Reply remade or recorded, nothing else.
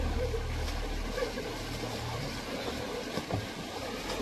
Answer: recorded